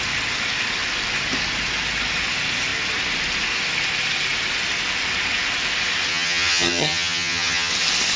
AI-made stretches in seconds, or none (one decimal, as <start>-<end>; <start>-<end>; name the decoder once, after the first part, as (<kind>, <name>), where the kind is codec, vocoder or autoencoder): 6.1-7.7 (vocoder, HiFi-GAN)